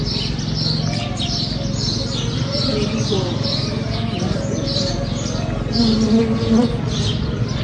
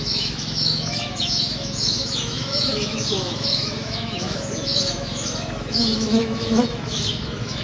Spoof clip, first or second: second